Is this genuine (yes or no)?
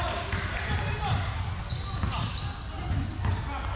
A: yes